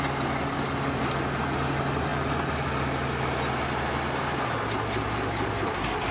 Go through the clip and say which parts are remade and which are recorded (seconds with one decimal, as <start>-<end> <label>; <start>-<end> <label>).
0.0-6.1 recorded